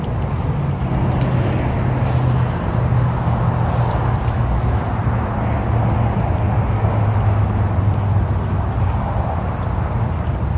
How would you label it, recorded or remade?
recorded